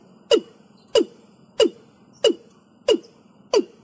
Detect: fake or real real